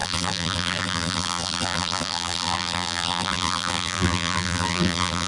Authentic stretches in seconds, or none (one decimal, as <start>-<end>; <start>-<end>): none